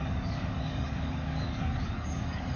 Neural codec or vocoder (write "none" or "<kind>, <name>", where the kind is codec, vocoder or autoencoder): codec, DAC